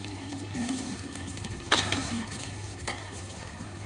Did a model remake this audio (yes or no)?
yes